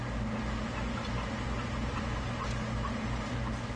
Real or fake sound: real